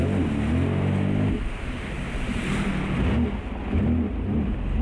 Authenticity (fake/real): real